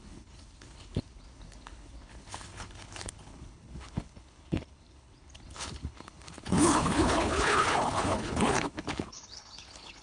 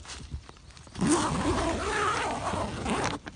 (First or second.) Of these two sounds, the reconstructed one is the first